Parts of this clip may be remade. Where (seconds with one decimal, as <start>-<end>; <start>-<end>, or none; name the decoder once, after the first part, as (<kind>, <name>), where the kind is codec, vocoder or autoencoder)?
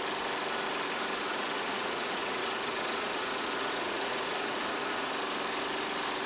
1.3-5.1 (vocoder, Vocos)